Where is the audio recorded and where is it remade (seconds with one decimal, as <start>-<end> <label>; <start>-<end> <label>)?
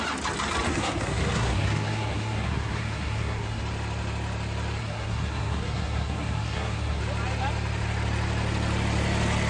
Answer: 0.0-0.7 recorded; 0.7-3.6 remade; 3.6-4.8 recorded; 4.8-7.0 remade; 7.0-9.5 recorded